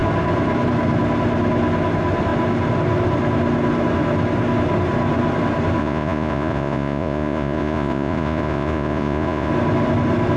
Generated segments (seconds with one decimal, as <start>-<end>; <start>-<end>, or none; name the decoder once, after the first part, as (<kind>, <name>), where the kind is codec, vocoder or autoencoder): 5.8-9.5 (vocoder, Vocos)